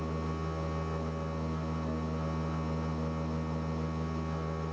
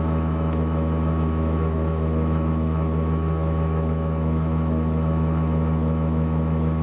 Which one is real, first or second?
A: first